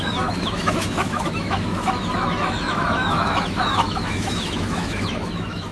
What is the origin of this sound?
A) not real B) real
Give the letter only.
A